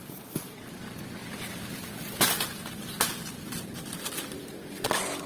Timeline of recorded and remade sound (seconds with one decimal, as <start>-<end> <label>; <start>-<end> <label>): 0.0-5.3 recorded